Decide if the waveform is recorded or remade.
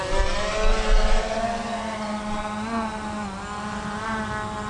recorded